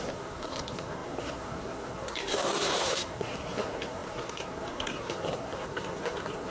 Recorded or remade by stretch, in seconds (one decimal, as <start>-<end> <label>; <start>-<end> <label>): 0.0-6.5 remade